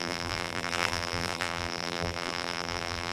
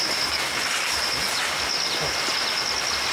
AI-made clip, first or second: first